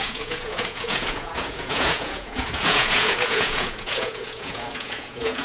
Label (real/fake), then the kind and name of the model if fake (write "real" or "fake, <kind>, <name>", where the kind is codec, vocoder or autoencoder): fake, vocoder, Vocos